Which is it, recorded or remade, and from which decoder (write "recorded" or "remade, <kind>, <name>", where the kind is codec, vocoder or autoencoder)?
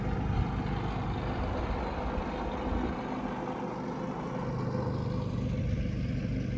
recorded